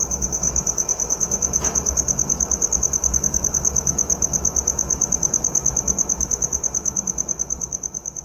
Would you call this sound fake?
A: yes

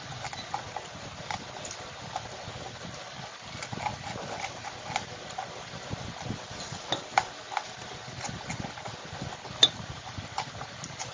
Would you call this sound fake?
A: no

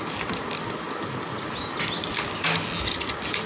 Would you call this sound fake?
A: no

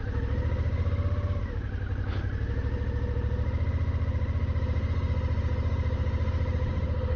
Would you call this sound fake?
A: no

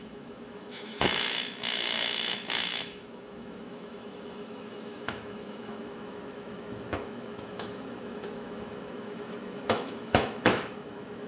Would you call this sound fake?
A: yes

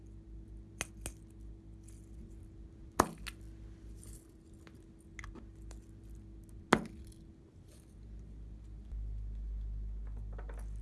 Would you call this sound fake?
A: no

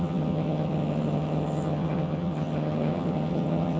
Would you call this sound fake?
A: yes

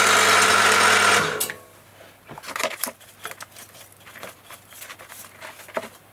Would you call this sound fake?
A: no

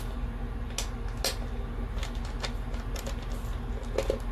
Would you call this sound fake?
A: no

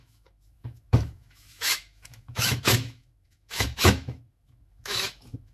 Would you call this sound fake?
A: yes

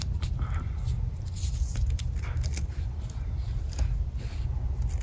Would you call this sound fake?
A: no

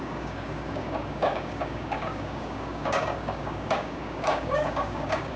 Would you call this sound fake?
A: yes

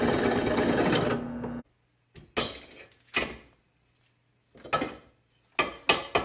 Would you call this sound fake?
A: no